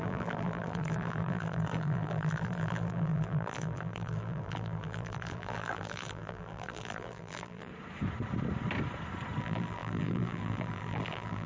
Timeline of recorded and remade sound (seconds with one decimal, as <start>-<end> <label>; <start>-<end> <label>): 0.0-7.7 remade; 7.7-9.4 recorded; 9.4-11.5 remade